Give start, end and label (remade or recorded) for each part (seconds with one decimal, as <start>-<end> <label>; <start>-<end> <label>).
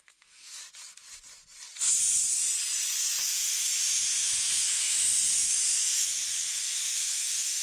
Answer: 0.0-0.6 remade; 0.6-3.2 recorded; 3.2-7.6 remade